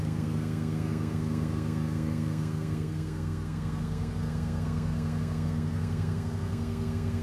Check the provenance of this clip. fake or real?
fake